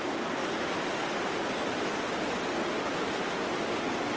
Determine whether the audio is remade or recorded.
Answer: recorded